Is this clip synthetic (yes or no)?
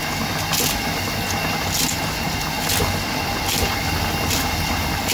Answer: no